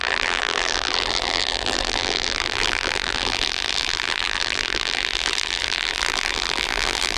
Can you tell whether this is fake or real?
fake